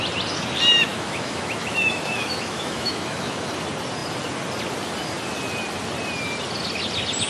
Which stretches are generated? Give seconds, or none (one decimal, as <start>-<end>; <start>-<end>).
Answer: 0.9-3.5